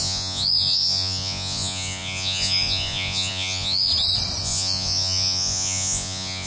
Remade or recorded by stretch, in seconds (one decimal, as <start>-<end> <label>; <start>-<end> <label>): 0.0-3.9 remade; 3.9-4.4 recorded; 4.4-6.5 remade